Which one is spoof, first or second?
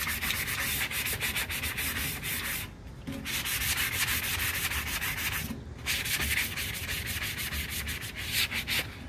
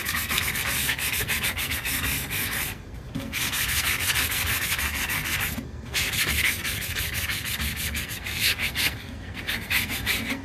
second